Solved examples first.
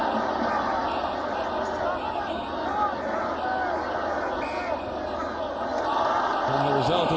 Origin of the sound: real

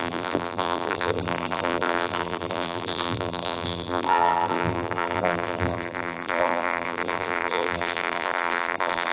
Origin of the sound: fake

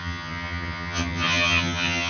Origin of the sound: fake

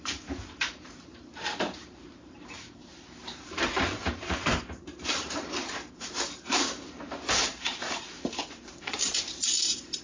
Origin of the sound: fake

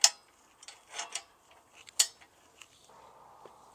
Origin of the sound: real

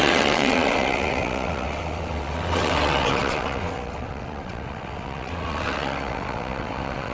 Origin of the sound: fake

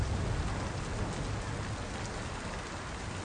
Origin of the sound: real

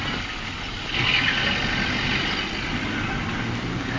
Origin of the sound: real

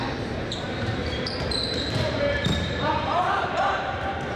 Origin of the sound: fake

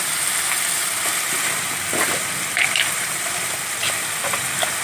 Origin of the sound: real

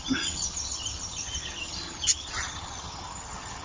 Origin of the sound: fake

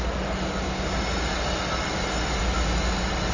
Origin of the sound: real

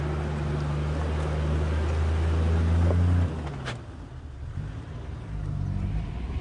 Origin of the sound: real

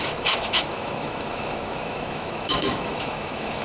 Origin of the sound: fake